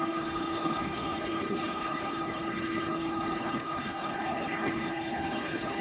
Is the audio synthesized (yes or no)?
yes